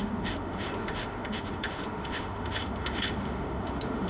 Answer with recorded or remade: remade